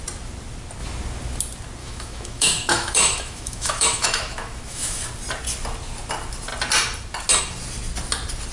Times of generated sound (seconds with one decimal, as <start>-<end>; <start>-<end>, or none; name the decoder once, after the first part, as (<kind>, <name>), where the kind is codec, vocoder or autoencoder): 1.8-5.0 (autoencoder, DAC-VAE)